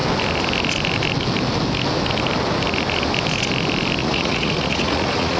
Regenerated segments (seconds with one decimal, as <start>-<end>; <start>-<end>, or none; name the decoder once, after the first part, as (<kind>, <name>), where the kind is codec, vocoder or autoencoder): 4.0-5.4 (vocoder, Vocos)